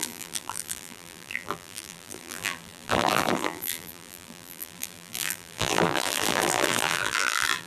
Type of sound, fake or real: fake